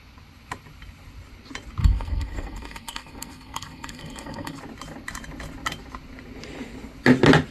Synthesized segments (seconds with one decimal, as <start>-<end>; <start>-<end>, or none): 1.8-4.6

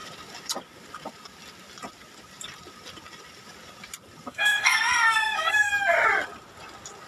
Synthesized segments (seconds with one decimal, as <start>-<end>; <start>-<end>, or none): 4.3-5.7

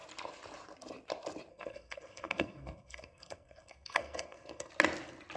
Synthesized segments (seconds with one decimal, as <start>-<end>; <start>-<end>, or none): 1.5-4.7

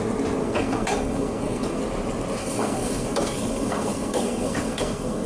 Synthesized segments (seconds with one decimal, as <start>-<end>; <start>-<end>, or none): 0.4-1.8; 2.4-5.3